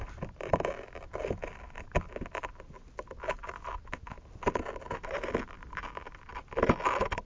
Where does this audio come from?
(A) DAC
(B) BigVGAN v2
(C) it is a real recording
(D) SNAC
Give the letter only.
C